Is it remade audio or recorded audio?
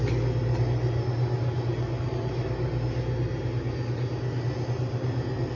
recorded